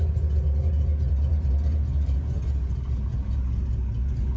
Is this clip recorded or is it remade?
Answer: recorded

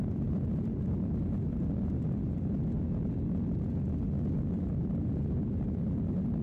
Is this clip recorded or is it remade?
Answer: recorded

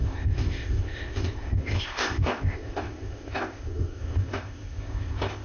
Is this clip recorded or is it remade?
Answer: remade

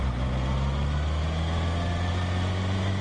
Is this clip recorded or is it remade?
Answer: recorded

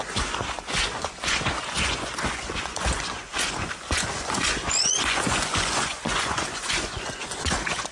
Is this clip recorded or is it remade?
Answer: remade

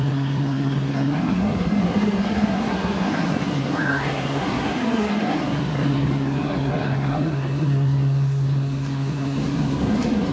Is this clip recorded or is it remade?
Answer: remade